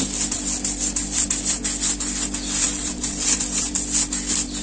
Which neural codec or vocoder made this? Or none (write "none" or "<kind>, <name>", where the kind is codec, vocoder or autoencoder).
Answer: none